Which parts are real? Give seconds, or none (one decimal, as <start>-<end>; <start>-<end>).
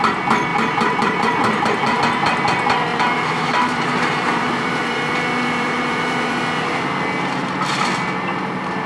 0.0-0.5; 2.0-2.9; 6.4-8.9